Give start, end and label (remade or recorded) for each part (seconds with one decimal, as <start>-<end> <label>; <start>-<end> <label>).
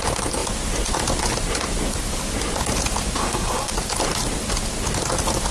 0.0-3.2 recorded; 3.2-3.7 remade; 3.7-5.5 recorded